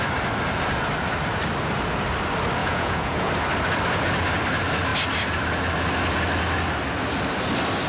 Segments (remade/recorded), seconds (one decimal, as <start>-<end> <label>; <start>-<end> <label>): 0.0-2.6 recorded; 2.6-3.3 remade; 3.3-7.9 recorded